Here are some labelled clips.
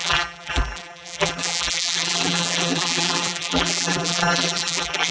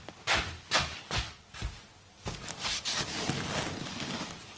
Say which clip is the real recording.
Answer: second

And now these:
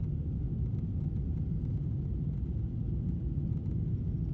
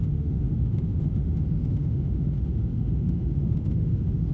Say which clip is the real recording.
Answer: first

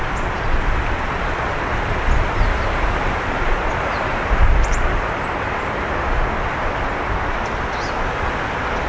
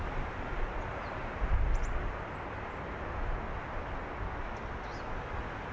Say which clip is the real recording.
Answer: second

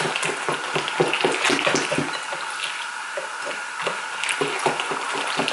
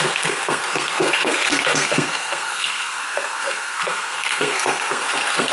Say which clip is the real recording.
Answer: first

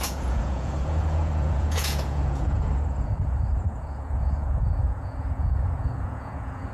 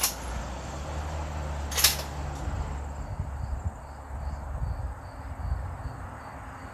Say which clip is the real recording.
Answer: second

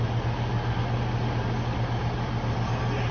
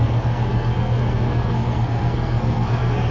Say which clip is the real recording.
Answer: first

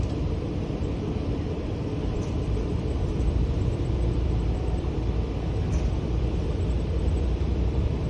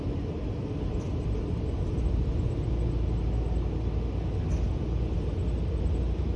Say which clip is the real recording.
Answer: second